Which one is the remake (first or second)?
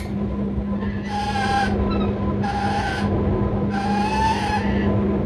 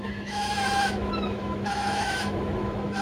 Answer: second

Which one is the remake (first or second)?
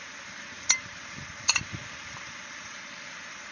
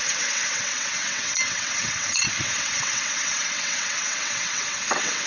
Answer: second